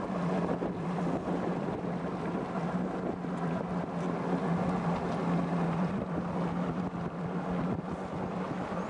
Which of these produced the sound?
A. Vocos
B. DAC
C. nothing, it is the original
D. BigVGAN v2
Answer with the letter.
C